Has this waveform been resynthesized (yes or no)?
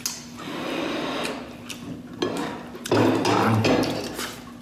no